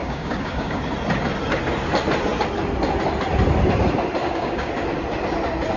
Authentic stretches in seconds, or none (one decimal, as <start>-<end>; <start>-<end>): 0.8-4.2; 4.7-5.8